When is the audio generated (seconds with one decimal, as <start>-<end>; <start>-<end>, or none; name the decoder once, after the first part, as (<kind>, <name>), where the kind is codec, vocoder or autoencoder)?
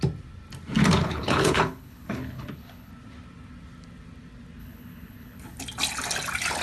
1.0-2.9 (codec, HILCodec); 4.6-5.6